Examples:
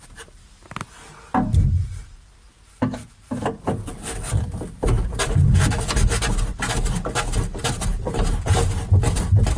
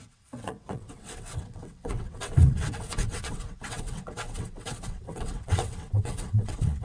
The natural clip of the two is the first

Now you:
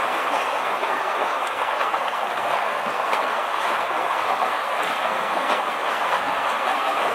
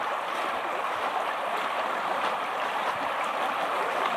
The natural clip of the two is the second